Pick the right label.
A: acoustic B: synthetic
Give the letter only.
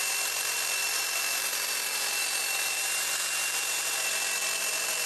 B